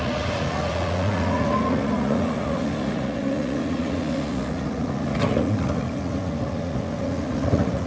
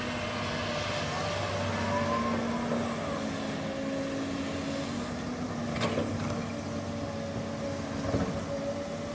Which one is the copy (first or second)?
first